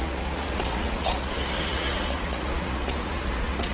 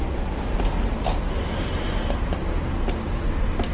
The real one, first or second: second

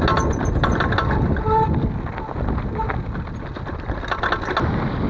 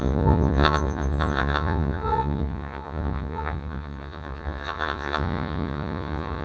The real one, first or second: first